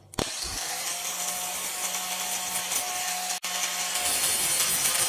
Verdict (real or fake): real